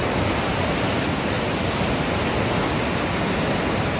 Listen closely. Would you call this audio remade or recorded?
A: recorded